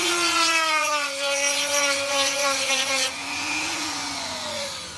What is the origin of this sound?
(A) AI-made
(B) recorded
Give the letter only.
A